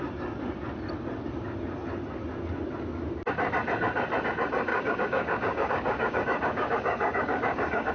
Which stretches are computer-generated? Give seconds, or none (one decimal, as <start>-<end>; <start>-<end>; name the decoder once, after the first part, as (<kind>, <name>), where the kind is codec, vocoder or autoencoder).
4.7-7.9 (codec, DAC)